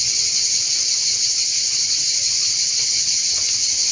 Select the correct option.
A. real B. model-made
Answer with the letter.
A